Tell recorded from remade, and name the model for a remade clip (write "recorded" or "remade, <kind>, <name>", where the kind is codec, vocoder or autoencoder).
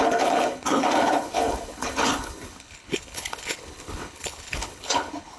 remade, codec, HILCodec